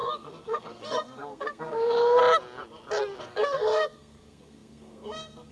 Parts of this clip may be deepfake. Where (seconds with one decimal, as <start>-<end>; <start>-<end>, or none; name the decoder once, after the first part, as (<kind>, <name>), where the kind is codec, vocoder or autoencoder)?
0.0-2.2 (codec, SNAC); 3.2-5.5